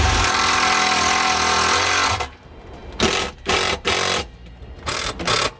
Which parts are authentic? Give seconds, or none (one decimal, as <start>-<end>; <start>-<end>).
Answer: 0.0-5.6